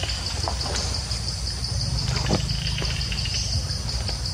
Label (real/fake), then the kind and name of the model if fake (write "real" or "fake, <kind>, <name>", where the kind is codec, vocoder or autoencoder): real